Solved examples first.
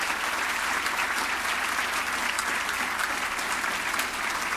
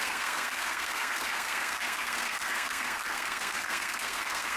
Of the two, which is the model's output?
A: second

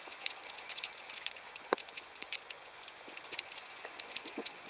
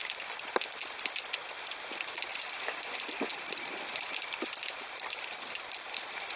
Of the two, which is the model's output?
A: first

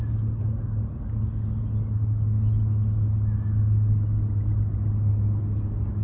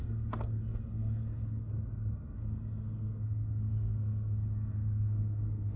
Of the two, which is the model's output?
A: second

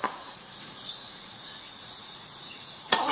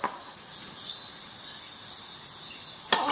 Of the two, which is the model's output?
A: first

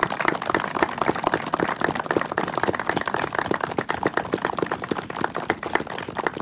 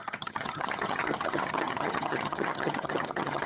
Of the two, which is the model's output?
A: second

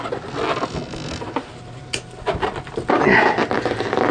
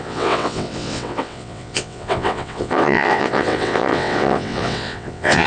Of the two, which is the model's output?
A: second